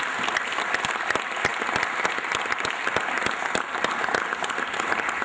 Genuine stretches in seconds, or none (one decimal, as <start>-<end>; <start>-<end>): 0.0-5.2